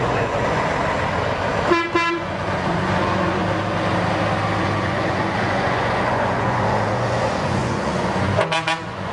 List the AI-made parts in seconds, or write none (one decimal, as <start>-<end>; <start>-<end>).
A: 0.0-0.7; 2.1-3.4; 4.6-9.1